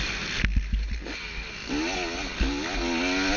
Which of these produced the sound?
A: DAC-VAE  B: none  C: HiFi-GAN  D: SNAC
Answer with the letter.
B